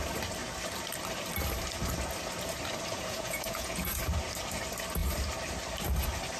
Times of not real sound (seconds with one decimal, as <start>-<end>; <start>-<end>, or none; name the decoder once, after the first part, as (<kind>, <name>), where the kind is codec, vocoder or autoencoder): 2.9-4.0 (vocoder, Vocos)